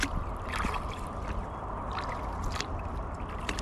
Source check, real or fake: real